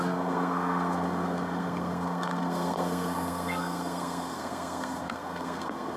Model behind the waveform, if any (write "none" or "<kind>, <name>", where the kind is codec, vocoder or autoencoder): codec, SNAC